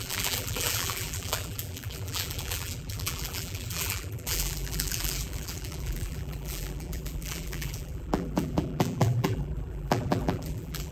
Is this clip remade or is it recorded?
remade